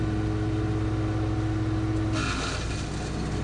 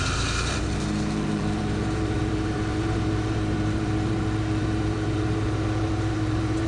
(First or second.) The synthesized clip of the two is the second